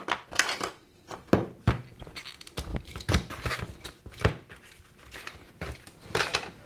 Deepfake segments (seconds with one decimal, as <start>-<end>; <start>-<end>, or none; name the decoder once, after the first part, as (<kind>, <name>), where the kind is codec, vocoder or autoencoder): none